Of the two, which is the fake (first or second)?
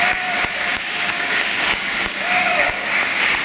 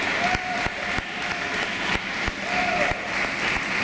first